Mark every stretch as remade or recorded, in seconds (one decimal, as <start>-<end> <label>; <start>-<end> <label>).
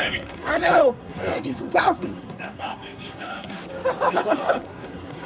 0.0-3.6 remade; 3.6-4.1 recorded; 4.1-5.3 remade